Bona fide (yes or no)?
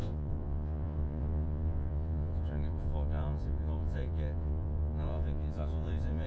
no